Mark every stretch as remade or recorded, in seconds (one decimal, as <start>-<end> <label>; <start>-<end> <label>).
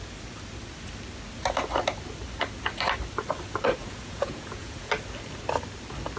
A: 0.0-3.8 recorded; 3.8-4.9 remade; 4.9-6.2 recorded